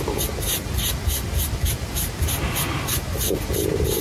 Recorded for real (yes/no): yes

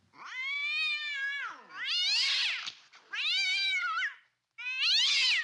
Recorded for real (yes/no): yes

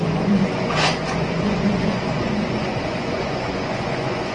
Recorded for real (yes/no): no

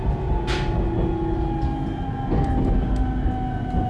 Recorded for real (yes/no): yes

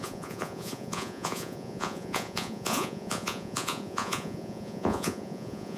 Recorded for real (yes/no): no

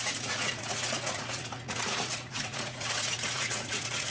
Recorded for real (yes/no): no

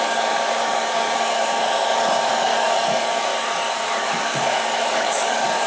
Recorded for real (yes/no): no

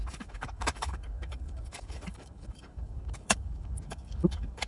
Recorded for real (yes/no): no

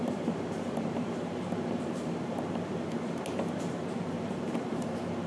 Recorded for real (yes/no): no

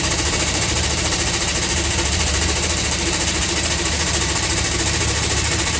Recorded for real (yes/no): no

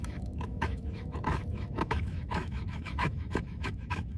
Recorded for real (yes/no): no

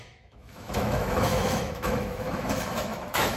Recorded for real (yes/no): no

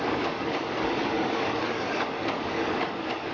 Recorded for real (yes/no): no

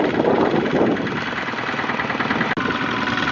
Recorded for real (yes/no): yes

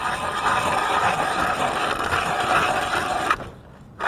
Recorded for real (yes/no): yes